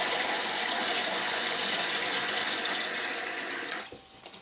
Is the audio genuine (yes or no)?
no